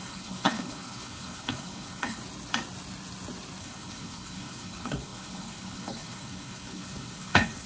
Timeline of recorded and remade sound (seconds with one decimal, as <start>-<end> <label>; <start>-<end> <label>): 0.0-2.2 remade; 2.2-3.6 recorded; 3.6-7.7 remade